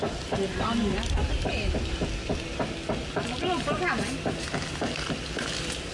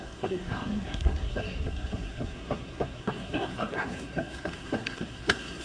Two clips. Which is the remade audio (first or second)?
second